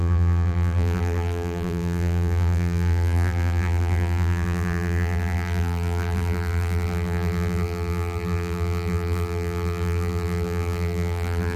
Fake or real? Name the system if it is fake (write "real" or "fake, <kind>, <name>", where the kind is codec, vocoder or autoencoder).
fake, vocoder, BigVGAN v2